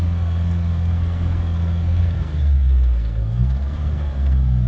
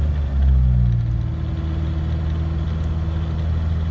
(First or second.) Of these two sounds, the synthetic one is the first